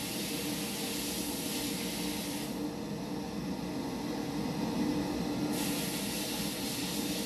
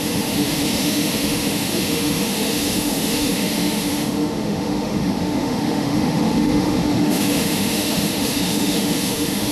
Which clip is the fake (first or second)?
second